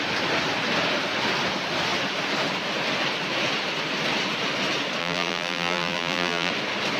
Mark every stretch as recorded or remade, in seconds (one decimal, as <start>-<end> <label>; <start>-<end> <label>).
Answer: 0.0-5.0 recorded; 5.0-6.5 remade; 6.5-7.0 recorded